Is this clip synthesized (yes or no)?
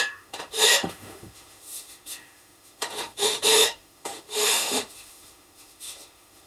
yes